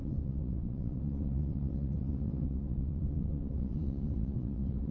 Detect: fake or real fake